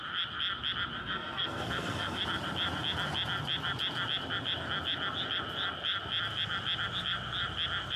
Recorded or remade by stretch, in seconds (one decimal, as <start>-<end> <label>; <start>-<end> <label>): 0.0-1.0 recorded; 1.0-2.2 remade; 2.2-8.0 recorded